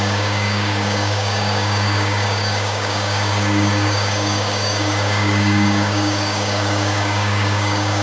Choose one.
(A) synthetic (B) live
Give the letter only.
A